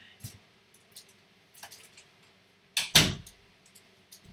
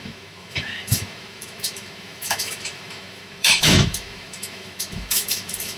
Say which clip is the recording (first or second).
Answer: first